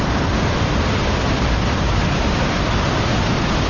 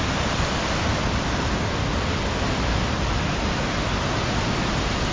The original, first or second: second